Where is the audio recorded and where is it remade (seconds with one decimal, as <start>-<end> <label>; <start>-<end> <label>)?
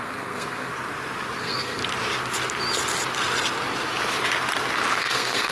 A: 0.0-0.7 remade; 0.7-1.4 recorded; 1.4-1.8 remade; 1.8-5.0 recorded; 5.0-5.5 remade